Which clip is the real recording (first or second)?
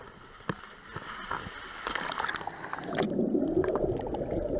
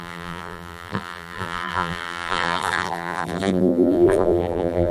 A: first